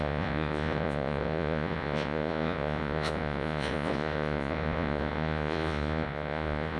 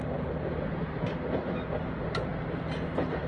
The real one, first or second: second